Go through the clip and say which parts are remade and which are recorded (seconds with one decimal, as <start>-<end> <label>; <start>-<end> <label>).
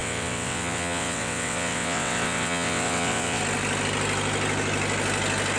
0.0-3.4 remade; 3.4-5.6 recorded